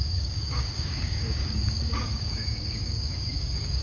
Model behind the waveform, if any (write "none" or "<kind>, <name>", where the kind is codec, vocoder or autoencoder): codec, DAC